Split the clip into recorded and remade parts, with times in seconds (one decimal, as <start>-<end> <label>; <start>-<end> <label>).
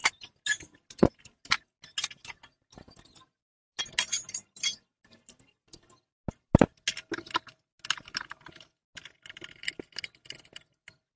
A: 0.0-11.2 recorded